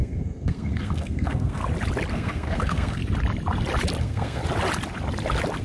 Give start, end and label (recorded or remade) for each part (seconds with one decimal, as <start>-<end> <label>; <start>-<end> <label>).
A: 0.0-1.6 remade; 1.6-2.1 recorded; 2.1-3.0 remade; 3.0-4.0 recorded; 4.0-4.4 remade; 4.4-5.6 recorded